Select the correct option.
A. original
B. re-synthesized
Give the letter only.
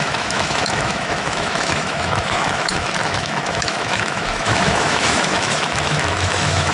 B